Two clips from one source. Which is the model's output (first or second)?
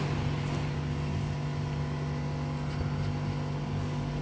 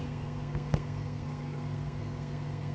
second